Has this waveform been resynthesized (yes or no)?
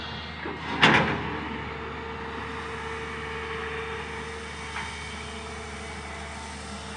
no